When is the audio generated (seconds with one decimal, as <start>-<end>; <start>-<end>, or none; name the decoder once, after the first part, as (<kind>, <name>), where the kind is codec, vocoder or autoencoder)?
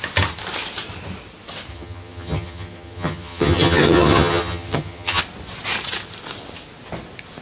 1.7-5.2 (vocoder, HiFi-GAN)